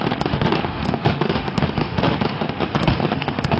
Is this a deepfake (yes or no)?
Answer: yes